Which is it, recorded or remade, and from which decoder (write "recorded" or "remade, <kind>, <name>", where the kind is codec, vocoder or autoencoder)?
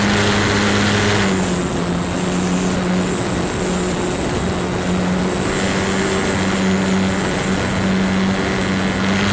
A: recorded